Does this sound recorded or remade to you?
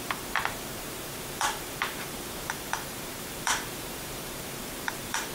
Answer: remade